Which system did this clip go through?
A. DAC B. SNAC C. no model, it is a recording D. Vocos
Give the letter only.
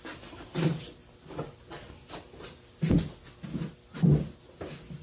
C